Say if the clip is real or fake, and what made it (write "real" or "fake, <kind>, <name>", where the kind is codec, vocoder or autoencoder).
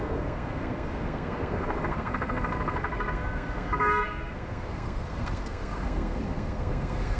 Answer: fake, codec, SNAC